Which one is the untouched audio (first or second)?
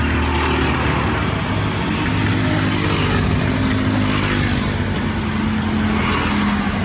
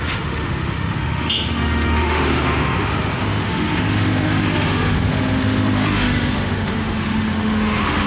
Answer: first